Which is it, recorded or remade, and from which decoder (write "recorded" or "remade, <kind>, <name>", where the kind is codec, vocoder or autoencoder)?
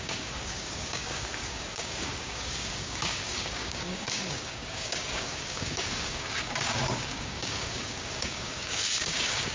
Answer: remade, codec, DAC